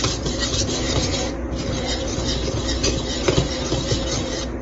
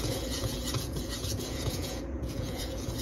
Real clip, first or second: first